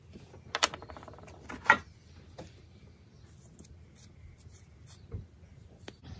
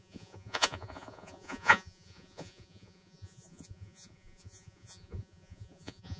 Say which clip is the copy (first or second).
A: second